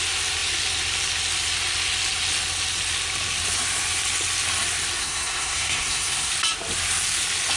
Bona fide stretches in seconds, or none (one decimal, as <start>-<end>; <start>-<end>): 0.0-5.0; 6.3-7.6